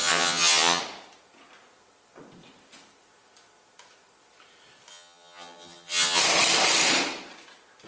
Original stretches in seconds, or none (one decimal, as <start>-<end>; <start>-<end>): 0.8-4.9; 6.2-7.9